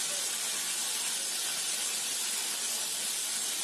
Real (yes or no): yes